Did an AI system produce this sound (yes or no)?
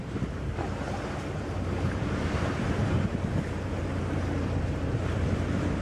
yes